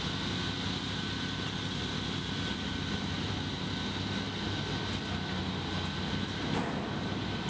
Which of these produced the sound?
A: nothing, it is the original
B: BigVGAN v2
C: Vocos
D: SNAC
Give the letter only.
A